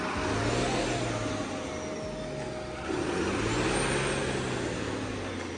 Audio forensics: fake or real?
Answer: real